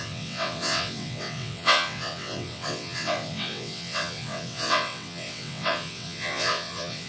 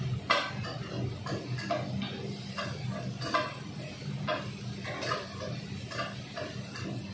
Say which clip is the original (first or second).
second